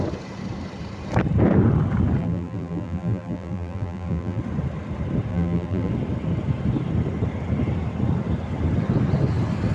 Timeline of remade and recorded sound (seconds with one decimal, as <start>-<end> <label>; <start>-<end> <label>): 0.0-2.2 recorded; 2.2-4.4 remade; 4.4-5.3 recorded; 5.3-5.9 remade; 5.9-9.7 recorded